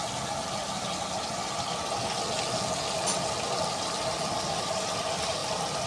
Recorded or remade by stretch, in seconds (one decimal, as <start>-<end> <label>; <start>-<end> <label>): 0.0-5.9 recorded